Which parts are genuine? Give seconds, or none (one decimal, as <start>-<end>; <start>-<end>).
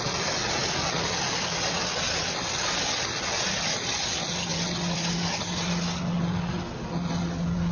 0.0-7.7